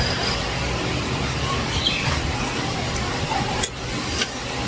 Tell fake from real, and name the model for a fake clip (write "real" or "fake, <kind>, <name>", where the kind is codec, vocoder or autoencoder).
real